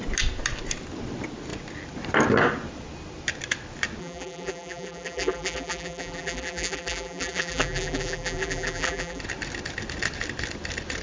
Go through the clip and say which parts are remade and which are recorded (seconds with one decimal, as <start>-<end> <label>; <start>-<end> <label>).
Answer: 0.0-4.0 recorded; 4.0-9.2 remade; 9.2-11.0 recorded